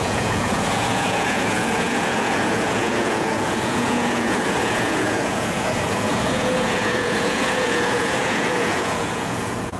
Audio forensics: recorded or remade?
remade